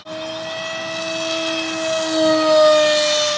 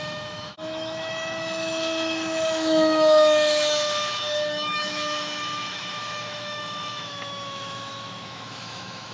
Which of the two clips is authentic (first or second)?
first